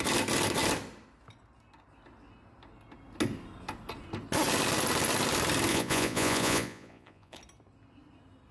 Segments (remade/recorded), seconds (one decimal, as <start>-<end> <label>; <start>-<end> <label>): 0.0-5.7 recorded; 5.7-7.4 remade; 7.4-8.5 recorded